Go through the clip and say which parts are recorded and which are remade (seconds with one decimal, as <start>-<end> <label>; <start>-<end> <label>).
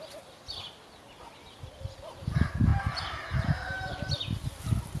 0.0-5.0 recorded